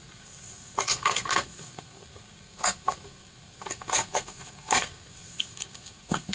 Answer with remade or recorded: remade